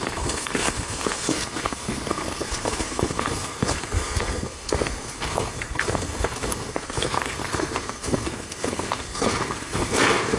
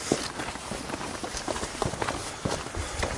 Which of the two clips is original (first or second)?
second